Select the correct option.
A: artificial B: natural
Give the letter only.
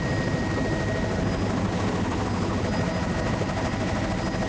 B